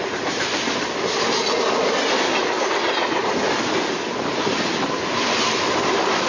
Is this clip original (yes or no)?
yes